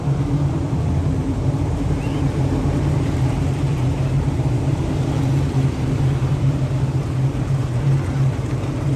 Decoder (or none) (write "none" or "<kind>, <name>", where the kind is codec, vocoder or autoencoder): vocoder, BigVGAN v2